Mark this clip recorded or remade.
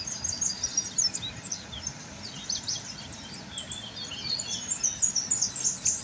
recorded